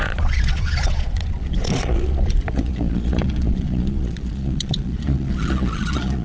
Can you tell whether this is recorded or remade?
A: remade